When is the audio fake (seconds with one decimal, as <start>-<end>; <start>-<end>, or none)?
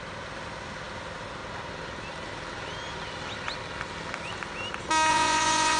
5.1-5.8